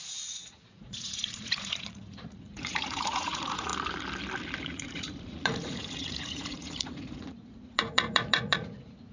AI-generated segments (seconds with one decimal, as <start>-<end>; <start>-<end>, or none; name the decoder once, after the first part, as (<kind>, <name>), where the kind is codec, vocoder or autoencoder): 0.0-3.7 (vocoder, Vocos); 4.6-9.1